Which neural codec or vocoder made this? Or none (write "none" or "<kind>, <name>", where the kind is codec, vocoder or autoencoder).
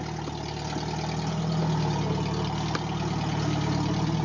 none